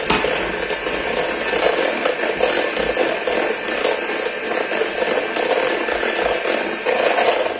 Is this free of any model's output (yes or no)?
yes